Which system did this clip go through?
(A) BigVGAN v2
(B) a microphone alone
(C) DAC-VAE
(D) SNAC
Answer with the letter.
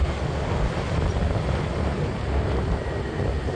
B